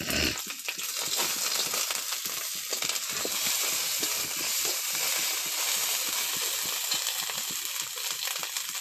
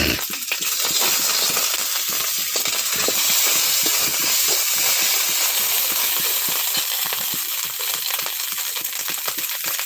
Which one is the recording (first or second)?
first